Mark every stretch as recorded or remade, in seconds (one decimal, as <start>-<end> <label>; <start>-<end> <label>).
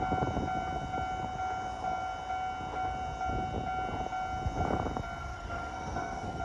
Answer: 0.0-5.2 recorded; 5.2-6.4 remade